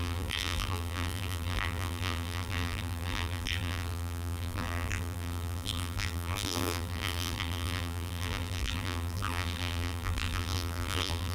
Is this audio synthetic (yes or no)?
yes